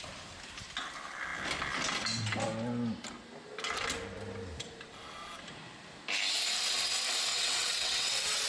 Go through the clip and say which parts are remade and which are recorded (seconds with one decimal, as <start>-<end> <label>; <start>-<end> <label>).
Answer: 0.0-7.3 recorded; 7.3-8.5 remade